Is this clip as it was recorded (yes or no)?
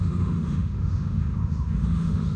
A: no